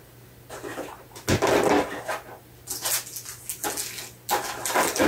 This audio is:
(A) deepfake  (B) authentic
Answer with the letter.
B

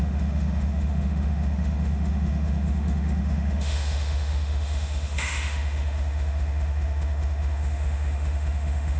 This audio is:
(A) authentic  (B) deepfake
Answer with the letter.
B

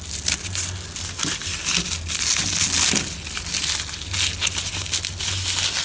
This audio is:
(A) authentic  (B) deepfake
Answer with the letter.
A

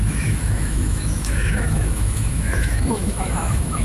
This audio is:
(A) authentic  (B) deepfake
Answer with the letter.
B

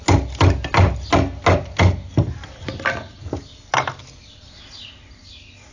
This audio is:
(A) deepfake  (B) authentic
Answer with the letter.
B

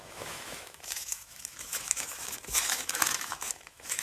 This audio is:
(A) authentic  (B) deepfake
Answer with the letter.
B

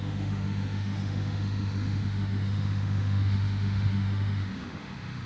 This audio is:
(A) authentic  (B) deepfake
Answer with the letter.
B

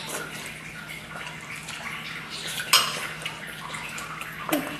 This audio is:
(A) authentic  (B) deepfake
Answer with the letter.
A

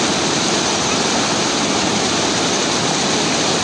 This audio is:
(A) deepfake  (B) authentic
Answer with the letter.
B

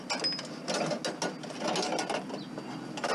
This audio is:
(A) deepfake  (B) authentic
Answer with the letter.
B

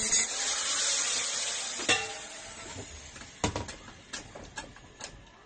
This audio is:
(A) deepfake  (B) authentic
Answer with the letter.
B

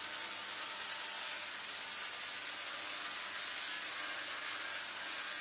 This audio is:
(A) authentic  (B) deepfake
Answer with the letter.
A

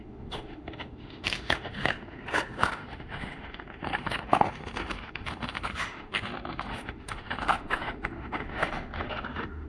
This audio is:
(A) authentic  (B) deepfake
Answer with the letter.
B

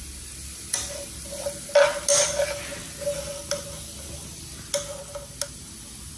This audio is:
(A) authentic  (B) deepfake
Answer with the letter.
A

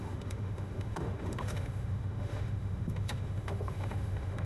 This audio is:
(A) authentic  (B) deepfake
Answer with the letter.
B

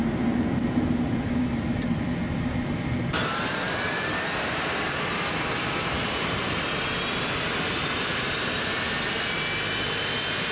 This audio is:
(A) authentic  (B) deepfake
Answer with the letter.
A